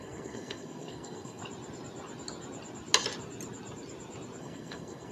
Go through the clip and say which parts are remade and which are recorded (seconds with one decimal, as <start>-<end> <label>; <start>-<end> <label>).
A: 0.0-1.4 remade; 1.4-4.4 recorded; 4.4-5.1 remade